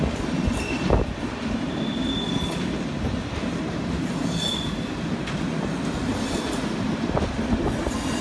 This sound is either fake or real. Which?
real